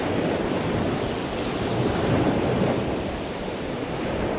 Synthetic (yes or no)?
no